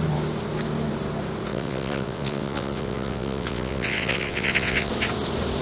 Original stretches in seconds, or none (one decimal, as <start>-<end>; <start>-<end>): 0.0-1.5; 4.9-5.6